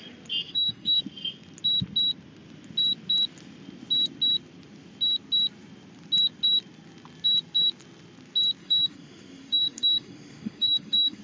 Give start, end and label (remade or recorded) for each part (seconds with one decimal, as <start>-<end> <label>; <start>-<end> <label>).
0.0-0.4 recorded; 0.4-1.0 remade; 1.0-8.6 recorded; 8.6-11.2 remade